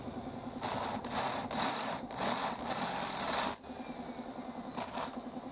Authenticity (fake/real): real